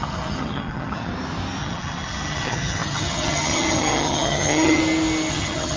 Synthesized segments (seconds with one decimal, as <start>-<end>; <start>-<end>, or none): 0.0-1.1; 1.6-4.8; 5.3-5.8